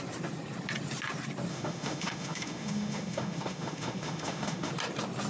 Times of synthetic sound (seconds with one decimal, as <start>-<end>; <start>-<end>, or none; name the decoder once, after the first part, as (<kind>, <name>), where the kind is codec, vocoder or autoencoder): 1.5-4.7 (autoencoder, DAC-VAE)